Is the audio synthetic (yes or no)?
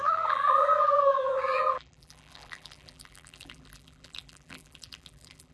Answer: yes